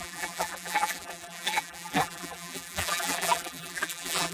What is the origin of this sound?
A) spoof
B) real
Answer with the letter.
A